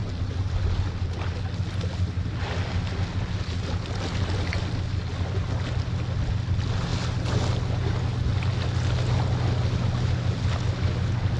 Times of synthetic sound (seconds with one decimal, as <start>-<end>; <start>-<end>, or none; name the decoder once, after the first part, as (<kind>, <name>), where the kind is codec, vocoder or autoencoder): none